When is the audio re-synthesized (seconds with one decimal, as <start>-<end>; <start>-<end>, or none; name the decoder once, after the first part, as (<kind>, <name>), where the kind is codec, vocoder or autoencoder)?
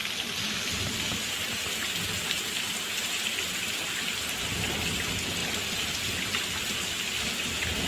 none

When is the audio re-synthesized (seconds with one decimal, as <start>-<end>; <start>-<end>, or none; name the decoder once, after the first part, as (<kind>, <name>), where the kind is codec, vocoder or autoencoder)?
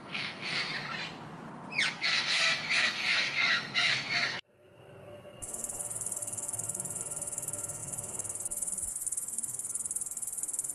0.0-0.7 (codec, SNAC); 1.9-10.7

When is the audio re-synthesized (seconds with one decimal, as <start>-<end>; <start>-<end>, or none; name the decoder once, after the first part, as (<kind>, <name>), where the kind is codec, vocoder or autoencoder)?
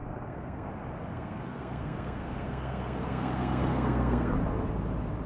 0.0-0.7 (codec, SNAC); 1.1-4.3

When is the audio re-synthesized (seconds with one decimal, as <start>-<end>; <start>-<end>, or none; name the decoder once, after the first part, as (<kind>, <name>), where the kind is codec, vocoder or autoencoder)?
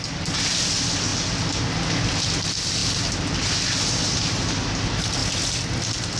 none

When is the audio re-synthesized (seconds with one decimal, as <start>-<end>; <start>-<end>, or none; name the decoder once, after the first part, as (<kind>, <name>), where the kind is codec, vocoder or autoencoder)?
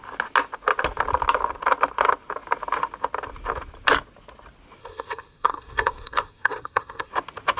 4.8-7.1 (codec, SNAC)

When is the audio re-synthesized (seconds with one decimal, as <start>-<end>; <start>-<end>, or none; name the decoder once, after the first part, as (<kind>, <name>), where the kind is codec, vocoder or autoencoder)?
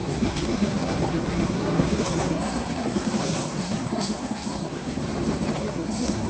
0.0-5.0 (codec, SNAC); 5.6-6.3